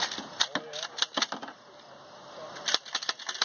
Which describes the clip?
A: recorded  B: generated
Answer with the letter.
A